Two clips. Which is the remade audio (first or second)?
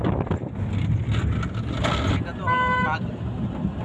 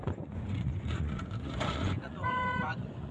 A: second